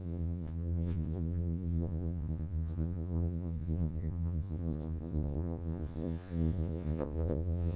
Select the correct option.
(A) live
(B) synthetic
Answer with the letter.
B